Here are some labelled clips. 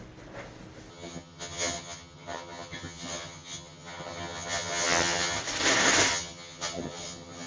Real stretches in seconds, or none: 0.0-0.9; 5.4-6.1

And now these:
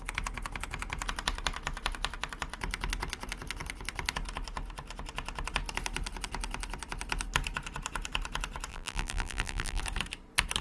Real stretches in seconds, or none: 0.0-8.7; 9.8-10.6

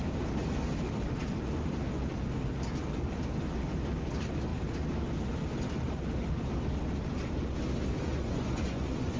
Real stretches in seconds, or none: 0.0-8.0

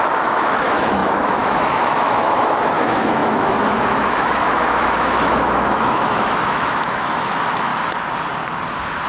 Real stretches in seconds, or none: 7.7-9.1

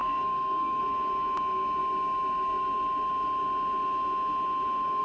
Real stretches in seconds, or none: 0.8-5.0

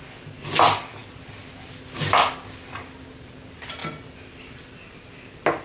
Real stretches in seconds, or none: 0.0-5.6